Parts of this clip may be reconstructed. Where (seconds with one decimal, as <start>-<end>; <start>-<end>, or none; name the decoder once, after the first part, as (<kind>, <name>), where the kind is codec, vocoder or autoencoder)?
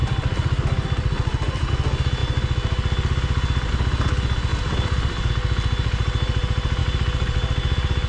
0.0-1.7 (vocoder, BigVGAN v2); 4.5-5.3